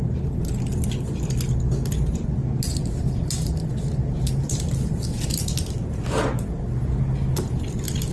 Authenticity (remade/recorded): recorded